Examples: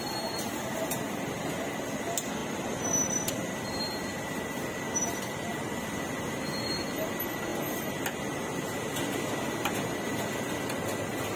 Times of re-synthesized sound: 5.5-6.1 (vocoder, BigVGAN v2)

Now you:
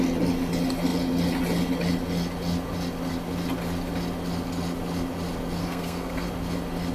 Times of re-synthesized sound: 5.6-6.3 (codec, SNAC)

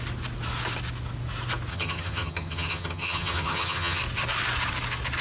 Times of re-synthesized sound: 1.7-4.0 (vocoder, HiFi-GAN)

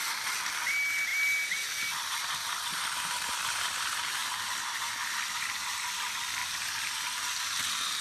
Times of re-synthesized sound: none